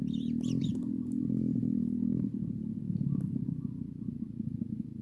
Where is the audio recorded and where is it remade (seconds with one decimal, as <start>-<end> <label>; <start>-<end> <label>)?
0.0-0.7 recorded; 0.7-2.8 remade; 2.8-5.0 recorded